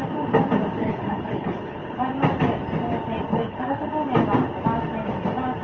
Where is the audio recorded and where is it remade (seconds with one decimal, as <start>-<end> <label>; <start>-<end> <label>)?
0.0-0.8 recorded; 0.8-2.0 remade; 2.0-3.3 recorded; 3.3-3.9 remade; 3.9-5.6 recorded

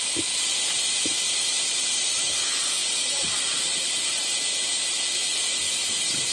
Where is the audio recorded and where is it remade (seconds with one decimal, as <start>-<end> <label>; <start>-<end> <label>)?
0.0-2.8 recorded; 2.8-3.6 remade; 3.6-6.3 recorded

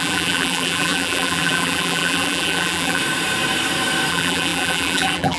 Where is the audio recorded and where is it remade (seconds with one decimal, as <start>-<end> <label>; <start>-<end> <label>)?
0.0-3.0 remade; 3.0-4.1 recorded; 4.1-5.4 remade